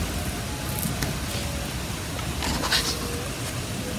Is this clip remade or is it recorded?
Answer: recorded